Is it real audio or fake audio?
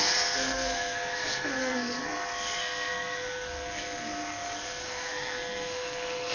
fake